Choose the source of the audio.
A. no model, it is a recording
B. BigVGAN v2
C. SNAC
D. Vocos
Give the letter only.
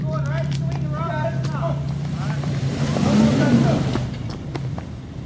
B